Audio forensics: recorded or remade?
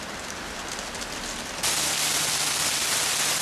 recorded